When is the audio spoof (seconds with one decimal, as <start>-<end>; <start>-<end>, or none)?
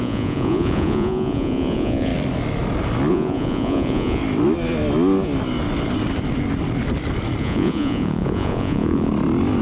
0.0-2.1; 3.1-4.2; 7.4-9.1